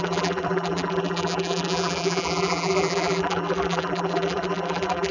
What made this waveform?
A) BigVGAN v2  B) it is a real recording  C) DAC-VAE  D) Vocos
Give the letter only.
A